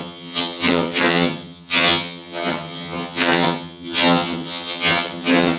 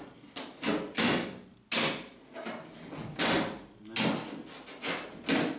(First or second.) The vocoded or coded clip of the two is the first